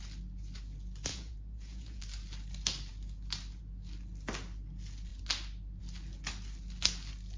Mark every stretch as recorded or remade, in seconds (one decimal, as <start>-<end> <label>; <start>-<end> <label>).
0.0-1.1 recorded; 1.1-2.0 remade; 2.0-7.4 recorded